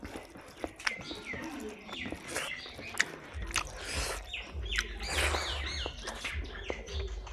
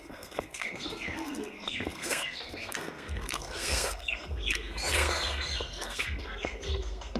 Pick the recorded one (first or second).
first